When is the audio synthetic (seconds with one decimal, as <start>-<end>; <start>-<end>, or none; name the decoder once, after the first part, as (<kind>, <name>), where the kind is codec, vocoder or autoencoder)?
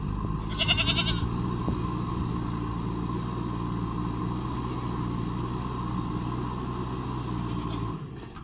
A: none